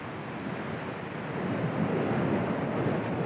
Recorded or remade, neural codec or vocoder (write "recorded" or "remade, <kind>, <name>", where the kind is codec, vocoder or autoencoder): recorded